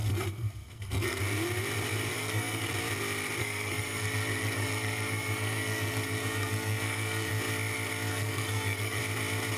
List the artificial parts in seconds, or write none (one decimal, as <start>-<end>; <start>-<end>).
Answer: 0.0-1.2; 2.1-2.7; 3.4-7.3; 8.1-9.0